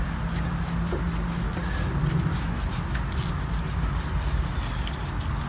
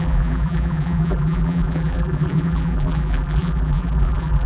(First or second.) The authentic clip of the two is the first